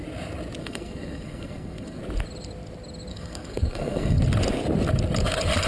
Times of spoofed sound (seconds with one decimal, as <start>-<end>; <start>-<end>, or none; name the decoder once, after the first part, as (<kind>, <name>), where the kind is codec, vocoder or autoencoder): 0.6-2.0 (codec, SNAC); 3.1-4.2